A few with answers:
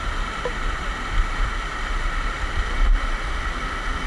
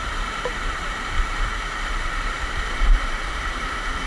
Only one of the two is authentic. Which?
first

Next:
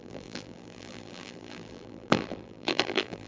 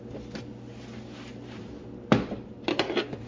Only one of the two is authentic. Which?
second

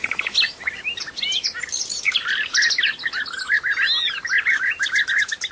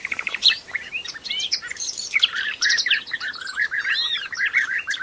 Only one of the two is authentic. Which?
first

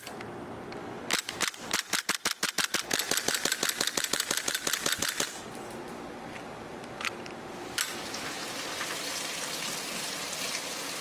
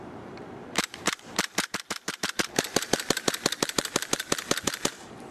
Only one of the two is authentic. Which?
first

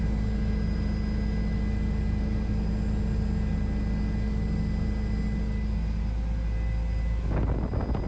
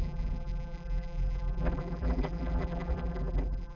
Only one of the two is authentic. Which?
first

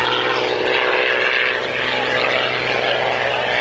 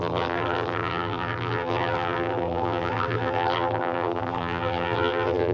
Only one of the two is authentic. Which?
first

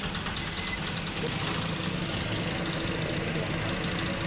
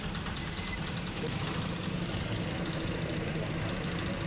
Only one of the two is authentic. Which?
first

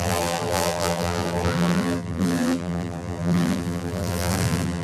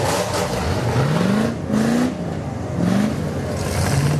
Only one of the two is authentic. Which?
second